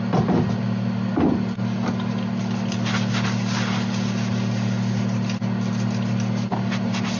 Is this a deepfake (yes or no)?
no